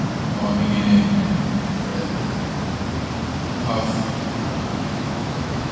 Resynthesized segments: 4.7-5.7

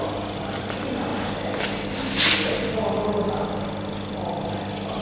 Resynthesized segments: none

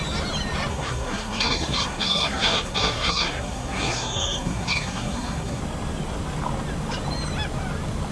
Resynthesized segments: 0.7-5.6